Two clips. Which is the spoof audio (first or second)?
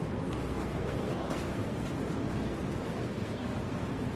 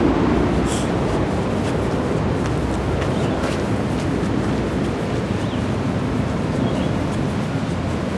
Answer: first